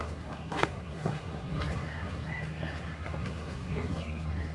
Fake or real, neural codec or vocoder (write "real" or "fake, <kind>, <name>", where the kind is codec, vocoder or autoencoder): fake, codec, SNAC